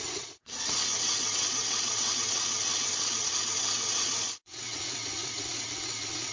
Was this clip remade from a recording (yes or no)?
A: yes